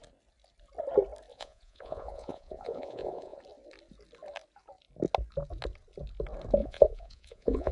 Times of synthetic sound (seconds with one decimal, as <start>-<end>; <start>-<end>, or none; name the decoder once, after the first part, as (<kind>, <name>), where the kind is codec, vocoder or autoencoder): 1.3-3.4 (vocoder, Vocos); 6.6-7.7